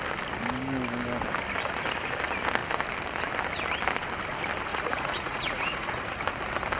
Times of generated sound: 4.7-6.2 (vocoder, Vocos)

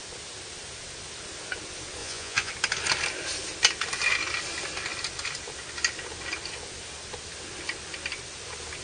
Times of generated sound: 2.0-2.5 (vocoder, Vocos)

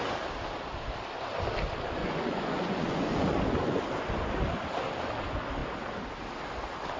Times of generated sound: 2.0-3.8 (vocoder, Vocos)